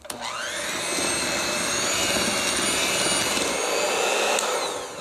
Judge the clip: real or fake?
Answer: real